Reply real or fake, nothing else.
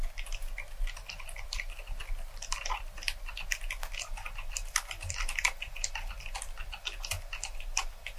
fake